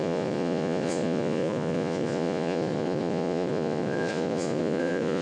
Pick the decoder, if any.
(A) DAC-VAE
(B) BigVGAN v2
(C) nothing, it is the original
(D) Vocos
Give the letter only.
D